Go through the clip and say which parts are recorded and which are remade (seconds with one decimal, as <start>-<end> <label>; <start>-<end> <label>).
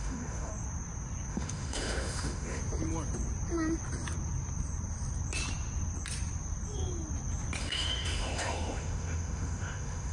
0.0-0.5 remade; 0.5-1.3 recorded; 1.3-2.6 remade; 2.6-7.6 recorded; 7.6-10.1 remade